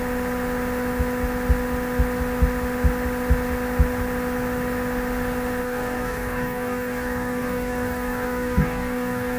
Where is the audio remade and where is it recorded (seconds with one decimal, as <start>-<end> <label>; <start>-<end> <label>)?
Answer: 0.0-5.6 recorded; 5.6-9.4 remade